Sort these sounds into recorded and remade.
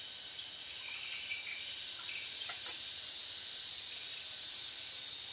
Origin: recorded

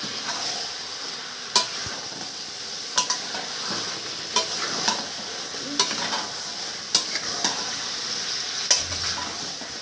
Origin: recorded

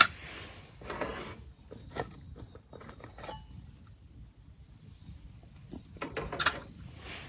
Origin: recorded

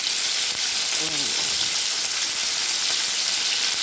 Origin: recorded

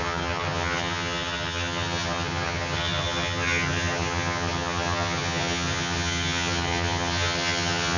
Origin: remade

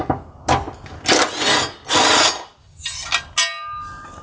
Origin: recorded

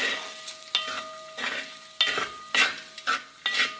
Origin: recorded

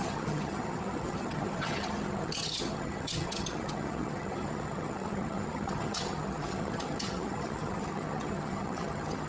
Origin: remade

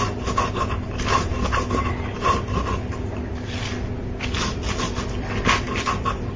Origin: recorded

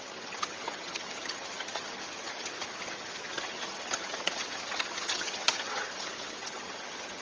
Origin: remade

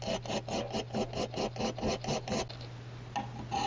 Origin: recorded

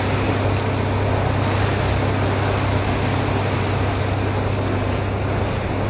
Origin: recorded